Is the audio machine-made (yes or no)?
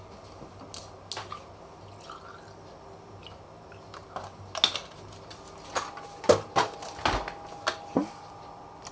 no